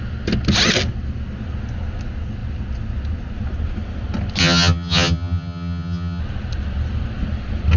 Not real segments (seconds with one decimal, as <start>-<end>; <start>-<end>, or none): 4.4-6.2

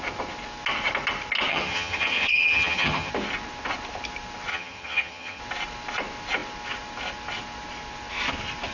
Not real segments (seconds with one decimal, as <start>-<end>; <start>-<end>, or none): 1.5-3.1; 4.5-5.4

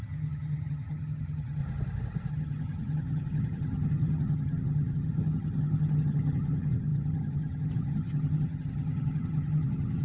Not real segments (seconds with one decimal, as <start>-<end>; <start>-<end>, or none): 0.0-1.6; 2.3-10.0

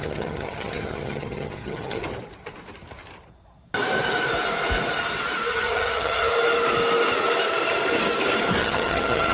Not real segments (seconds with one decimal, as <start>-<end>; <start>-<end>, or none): 0.0-2.0; 5.5-6.3; 8.6-9.3

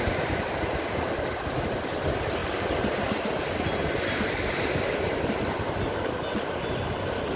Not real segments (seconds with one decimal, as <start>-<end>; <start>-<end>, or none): none

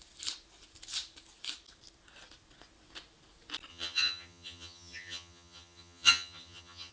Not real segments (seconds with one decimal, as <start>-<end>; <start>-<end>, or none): 3.7-6.9

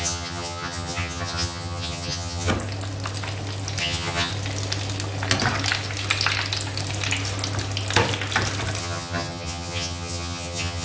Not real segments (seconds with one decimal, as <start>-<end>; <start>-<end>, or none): 0.0-2.5; 3.8-4.3; 8.8-10.8

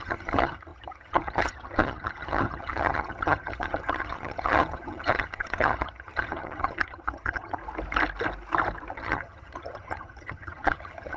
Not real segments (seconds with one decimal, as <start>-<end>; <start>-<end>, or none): 0.0-7.6; 8.9-11.2